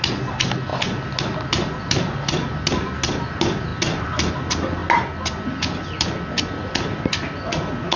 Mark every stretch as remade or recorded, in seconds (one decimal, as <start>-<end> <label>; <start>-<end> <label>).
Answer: 0.0-8.0 recorded